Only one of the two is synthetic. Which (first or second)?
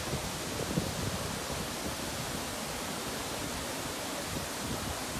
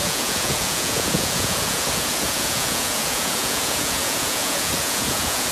second